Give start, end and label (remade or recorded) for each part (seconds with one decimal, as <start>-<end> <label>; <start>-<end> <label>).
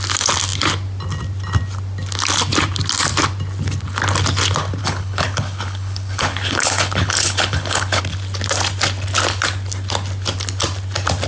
0.0-4.8 recorded; 4.8-8.0 remade; 8.0-11.3 recorded